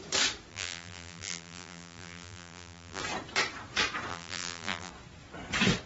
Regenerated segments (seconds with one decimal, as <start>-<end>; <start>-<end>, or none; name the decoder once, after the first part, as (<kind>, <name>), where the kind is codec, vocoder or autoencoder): 0.5-3.0 (vocoder, BigVGAN v2); 4.1-4.9

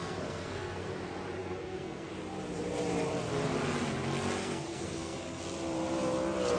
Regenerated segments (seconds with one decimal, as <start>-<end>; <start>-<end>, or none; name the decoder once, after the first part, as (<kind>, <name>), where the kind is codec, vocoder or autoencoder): 0.0-0.9 (codec, SNAC); 1.4-2.1; 4.4-5.4

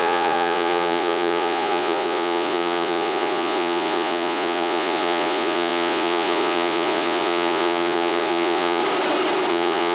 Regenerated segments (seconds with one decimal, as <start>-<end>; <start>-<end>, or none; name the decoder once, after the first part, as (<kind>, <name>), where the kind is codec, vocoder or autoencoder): 0.0-8.8 (vocoder, Vocos); 9.5-9.9

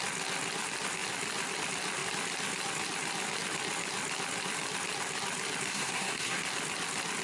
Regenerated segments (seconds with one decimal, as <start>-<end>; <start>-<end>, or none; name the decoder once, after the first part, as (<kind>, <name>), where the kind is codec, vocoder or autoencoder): 5.7-6.4 (codec, SNAC)

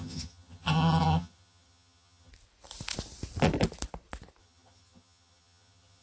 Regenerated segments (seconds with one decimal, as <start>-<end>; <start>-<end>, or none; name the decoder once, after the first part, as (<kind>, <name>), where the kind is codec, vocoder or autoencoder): 0.0-2.3 (vocoder, HiFi-GAN); 4.4-6.0

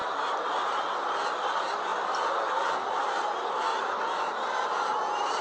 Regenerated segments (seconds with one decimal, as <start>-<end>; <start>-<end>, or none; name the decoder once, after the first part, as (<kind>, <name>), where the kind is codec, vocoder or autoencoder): 1.4-1.9 (vocoder, BigVGAN v2); 3.6-5.4

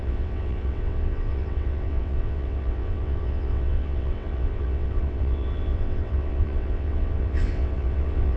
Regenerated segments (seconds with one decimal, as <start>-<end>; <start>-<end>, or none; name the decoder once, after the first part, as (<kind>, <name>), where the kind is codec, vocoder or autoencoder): 0.0-8.4 (vocoder, WaveNeXt)

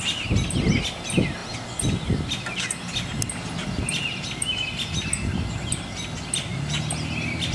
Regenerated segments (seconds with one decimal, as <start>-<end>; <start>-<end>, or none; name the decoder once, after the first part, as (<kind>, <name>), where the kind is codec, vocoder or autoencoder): none